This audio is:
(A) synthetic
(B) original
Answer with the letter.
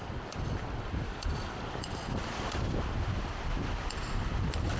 B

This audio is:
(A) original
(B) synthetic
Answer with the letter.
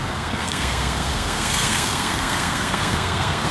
B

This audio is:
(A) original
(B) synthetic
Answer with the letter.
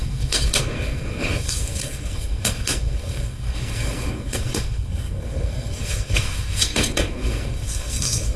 B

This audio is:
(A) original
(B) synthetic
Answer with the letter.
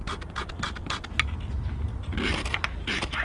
A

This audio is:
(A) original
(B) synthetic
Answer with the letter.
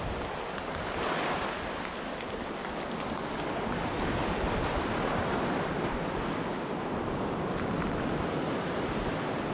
A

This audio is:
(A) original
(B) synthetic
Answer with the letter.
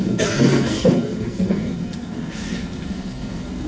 B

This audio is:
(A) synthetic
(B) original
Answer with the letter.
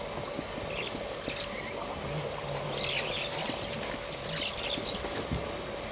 B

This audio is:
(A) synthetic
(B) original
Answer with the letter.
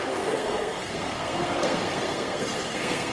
A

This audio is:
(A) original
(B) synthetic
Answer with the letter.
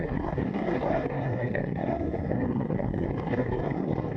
B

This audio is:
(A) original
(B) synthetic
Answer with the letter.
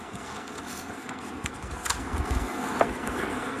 B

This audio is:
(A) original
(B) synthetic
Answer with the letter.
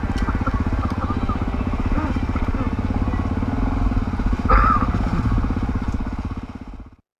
A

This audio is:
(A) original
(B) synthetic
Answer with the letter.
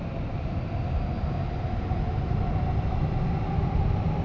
A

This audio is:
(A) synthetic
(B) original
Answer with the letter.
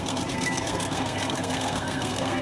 A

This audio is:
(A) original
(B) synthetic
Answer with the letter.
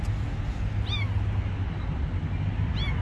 A